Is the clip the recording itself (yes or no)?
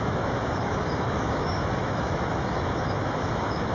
no